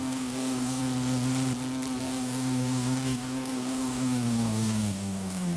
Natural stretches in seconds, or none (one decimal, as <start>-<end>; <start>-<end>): 0.8-2.0